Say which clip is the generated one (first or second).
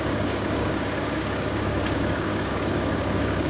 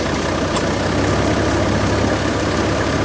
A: first